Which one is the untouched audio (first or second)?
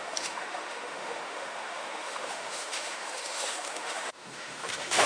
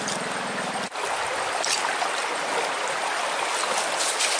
second